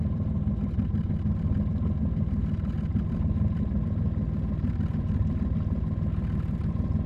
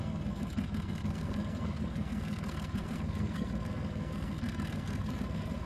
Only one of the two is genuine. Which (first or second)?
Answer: first